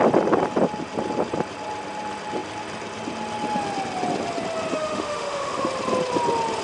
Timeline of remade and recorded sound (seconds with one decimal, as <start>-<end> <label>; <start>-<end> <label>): 0.0-4.7 recorded; 4.7-5.7 remade; 5.7-6.6 recorded